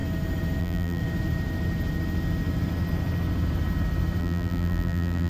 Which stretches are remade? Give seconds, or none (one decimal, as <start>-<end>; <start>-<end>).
0.6-1.0; 4.2-5.3